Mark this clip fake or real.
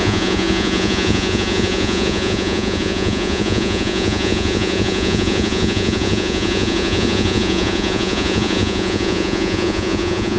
fake